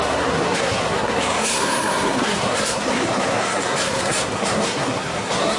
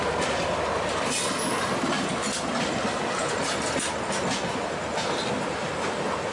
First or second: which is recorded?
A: second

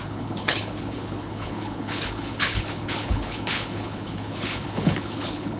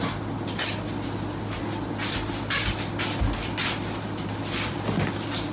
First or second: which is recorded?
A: second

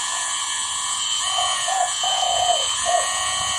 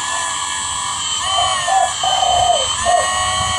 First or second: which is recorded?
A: second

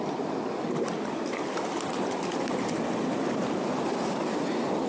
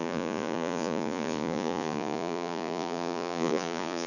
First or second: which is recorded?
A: first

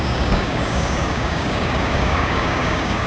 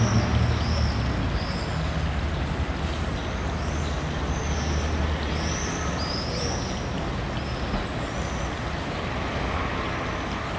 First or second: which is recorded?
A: second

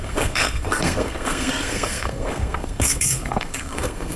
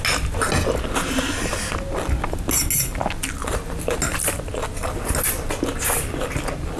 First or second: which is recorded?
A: second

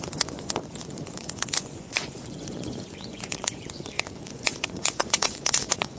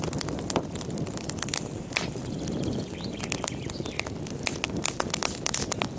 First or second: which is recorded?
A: second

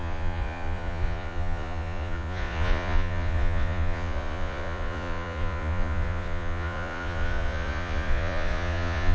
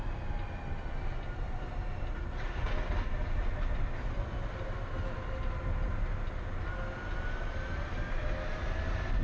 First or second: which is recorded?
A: second